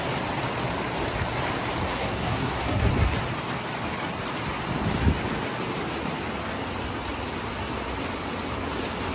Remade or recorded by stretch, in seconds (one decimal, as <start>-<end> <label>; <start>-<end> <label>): 0.0-1.9 recorded; 1.9-2.9 remade; 2.9-9.1 recorded